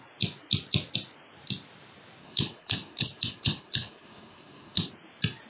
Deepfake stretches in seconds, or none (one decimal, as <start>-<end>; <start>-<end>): 2.2-4.9